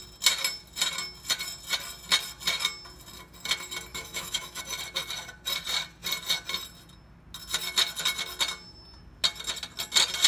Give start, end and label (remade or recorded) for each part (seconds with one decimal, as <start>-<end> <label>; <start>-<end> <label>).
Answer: 0.0-3.9 recorded; 3.9-4.6 remade; 4.6-10.3 recorded